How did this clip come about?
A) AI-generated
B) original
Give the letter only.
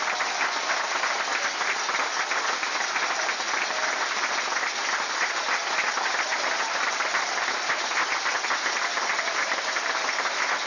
B